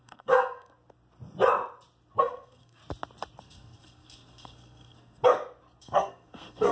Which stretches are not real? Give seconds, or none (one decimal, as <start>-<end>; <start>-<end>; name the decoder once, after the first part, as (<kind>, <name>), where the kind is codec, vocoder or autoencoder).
0.0-0.7 (codec, SNAC); 2.2-2.8; 3.4-5.2; 5.8-6.7